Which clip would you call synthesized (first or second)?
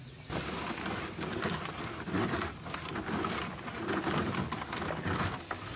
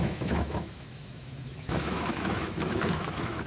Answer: second